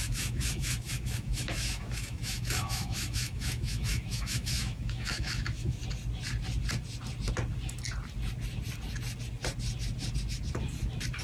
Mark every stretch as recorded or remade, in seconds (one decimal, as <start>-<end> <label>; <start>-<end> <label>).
0.0-5.8 remade; 5.8-11.2 recorded